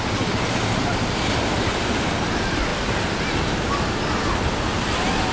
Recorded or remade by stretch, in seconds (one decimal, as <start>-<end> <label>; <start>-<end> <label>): 0.0-5.3 recorded